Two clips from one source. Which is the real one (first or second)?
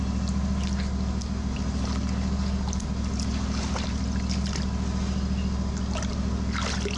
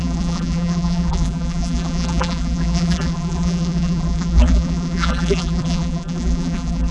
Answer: first